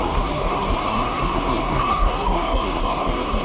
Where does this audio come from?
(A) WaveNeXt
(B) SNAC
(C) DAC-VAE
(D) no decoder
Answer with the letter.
B